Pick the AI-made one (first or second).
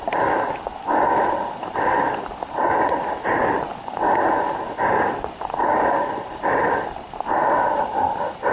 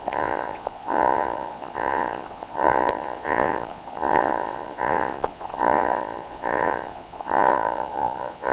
second